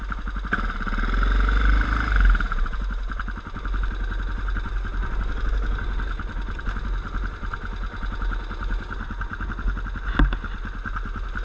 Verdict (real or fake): real